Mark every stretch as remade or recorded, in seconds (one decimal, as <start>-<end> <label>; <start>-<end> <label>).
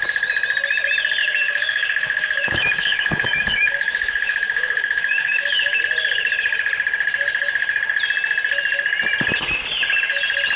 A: 0.0-1.2 recorded; 1.2-5.8 remade; 5.8-10.6 recorded